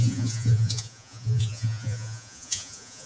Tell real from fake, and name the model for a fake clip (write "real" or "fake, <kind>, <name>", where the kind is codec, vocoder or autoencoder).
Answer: fake, vocoder, Vocos